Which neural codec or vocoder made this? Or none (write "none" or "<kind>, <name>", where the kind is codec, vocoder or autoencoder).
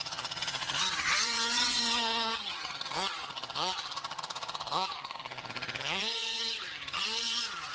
vocoder, HiFi-GAN